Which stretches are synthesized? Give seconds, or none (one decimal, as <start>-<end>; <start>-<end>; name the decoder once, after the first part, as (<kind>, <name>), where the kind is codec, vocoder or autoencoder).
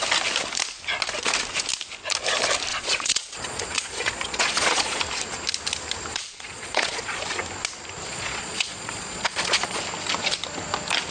2.7-5.0 (vocoder, Vocos); 6.1-7.2; 8.1-9.8